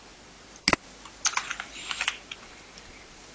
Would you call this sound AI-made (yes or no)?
no